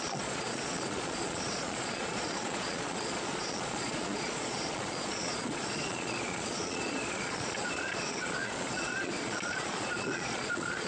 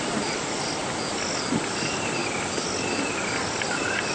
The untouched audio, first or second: second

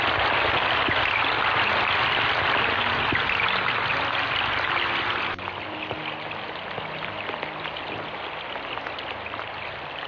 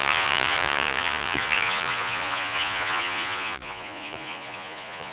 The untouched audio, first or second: first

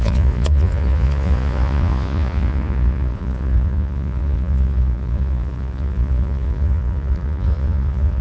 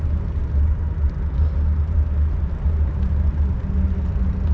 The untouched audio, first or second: second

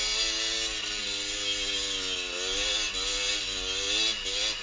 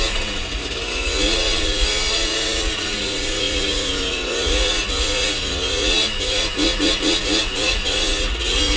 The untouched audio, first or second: first